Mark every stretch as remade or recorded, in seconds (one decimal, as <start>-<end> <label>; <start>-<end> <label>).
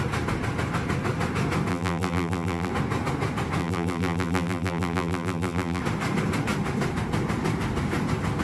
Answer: 0.0-1.7 recorded; 1.7-2.7 remade; 2.7-3.6 recorded; 3.6-5.8 remade; 5.8-8.4 recorded